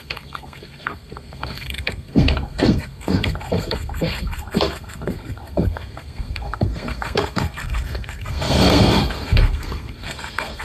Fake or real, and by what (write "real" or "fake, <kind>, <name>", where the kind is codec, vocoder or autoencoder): fake, codec, SNAC